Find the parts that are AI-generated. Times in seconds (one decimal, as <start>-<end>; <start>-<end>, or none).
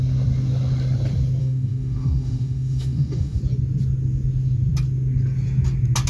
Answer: 1.4-3.4